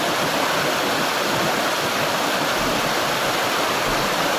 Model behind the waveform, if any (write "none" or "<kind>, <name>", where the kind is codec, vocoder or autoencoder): none